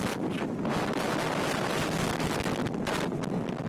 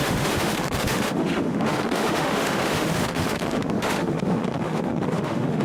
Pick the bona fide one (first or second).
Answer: first